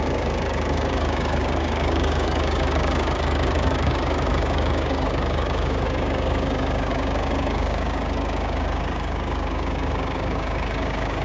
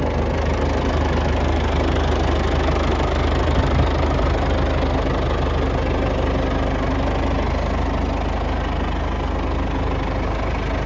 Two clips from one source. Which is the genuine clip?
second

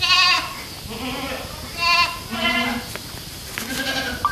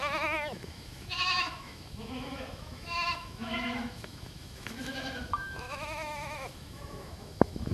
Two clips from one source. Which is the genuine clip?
first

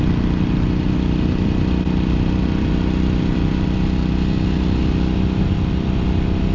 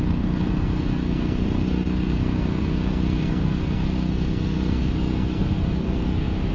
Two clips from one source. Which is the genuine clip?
first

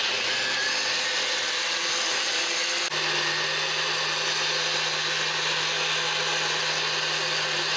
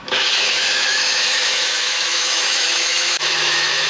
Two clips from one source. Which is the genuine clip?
first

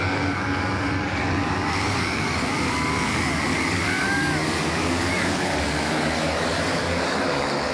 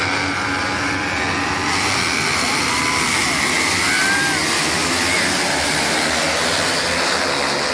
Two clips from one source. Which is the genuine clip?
second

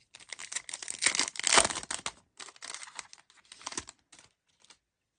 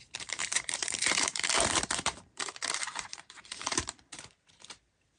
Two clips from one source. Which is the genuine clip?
first